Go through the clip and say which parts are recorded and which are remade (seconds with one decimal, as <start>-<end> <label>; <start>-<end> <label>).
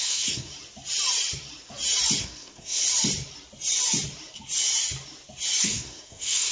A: 0.0-0.5 remade; 0.5-2.2 recorded; 2.2-2.8 remade; 2.8-5.6 recorded; 5.6-6.5 remade